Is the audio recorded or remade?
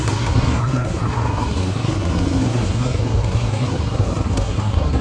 remade